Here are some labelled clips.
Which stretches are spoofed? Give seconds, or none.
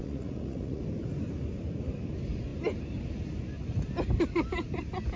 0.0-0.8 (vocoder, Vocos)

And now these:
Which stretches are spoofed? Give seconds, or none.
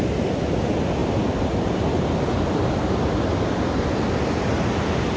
none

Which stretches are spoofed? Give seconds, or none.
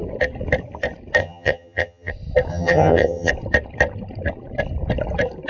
1.2-2.1 (vocoder, HiFi-GAN); 2.5-3.3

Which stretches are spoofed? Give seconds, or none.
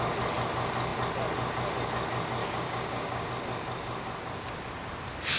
2.4-3.3 (codec, DAC)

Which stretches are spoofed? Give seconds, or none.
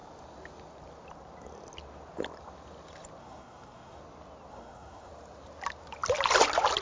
3.2-4.0 (codec, SNAC); 4.5-5.1